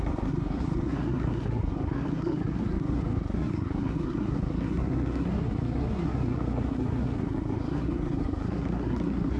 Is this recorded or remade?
remade